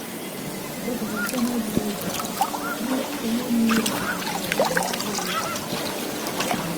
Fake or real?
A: real